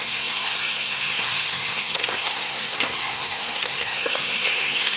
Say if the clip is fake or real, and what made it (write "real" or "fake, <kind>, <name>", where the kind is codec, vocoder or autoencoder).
fake, codec, SNAC